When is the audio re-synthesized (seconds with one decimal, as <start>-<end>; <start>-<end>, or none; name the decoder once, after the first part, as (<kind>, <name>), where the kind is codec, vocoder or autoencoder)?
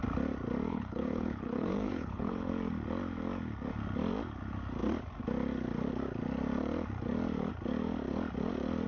0.7-2.5 (codec, HILCodec)